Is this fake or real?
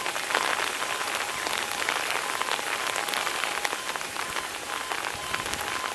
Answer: real